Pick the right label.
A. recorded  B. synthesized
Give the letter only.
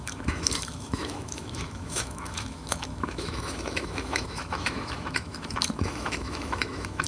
B